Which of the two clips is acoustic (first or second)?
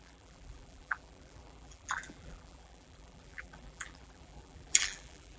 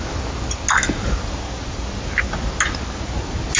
second